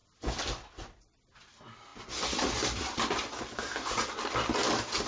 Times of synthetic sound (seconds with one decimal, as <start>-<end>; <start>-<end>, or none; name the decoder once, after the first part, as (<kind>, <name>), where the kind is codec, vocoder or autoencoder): none